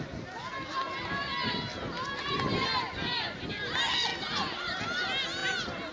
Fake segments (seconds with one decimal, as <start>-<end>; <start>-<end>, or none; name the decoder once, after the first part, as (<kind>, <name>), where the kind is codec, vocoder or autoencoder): none